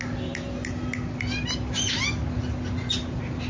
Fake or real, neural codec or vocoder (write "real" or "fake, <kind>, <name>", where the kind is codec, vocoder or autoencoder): real